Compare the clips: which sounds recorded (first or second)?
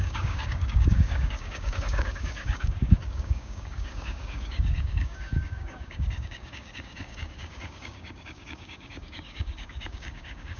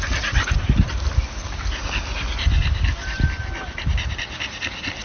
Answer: second